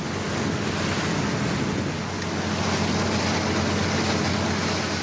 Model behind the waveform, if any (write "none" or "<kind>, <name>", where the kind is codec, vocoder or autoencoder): none